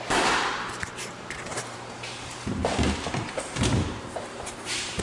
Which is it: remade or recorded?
remade